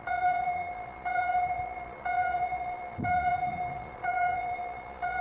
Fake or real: fake